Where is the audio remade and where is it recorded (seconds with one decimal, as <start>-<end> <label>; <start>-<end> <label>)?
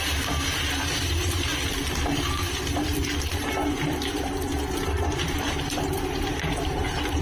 0.0-1.5 remade; 1.5-2.1 recorded; 2.1-7.2 remade